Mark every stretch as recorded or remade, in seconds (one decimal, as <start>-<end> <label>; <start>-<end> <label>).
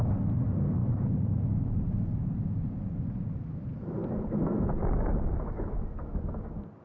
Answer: 0.0-6.8 recorded